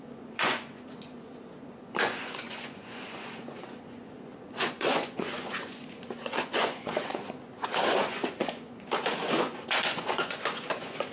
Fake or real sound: fake